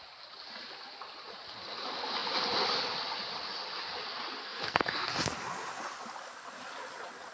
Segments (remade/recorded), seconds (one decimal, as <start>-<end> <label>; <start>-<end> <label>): 0.0-4.4 recorded; 4.4-5.1 remade; 5.1-7.3 recorded